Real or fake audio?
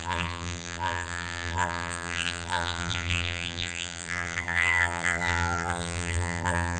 fake